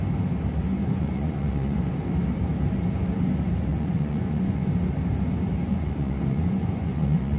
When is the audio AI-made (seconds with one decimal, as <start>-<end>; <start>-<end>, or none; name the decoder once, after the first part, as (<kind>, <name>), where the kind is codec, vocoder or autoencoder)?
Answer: 0.8-1.9 (vocoder, Vocos); 3.7-4.6; 5.7-7.4